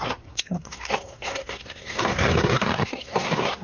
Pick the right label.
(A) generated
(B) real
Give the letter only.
A